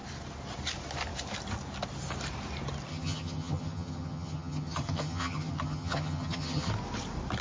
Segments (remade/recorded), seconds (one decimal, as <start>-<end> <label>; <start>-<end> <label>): 0.0-2.9 recorded; 2.9-6.7 remade; 6.7-7.4 recorded